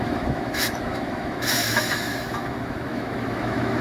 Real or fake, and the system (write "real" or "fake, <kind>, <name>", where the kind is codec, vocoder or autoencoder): fake, autoencoder, DAC-VAE